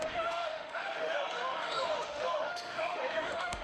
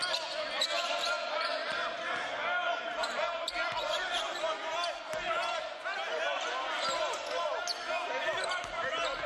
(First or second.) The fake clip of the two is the first